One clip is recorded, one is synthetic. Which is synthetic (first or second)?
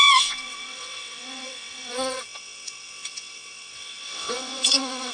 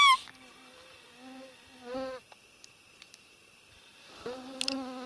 first